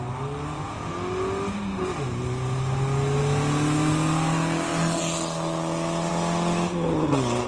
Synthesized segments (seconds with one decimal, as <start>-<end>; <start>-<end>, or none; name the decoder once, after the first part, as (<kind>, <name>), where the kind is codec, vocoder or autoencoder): none